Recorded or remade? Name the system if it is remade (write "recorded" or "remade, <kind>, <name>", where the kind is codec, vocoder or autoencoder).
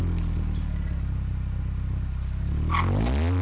recorded